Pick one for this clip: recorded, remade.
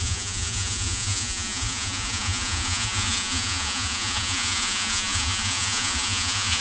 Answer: remade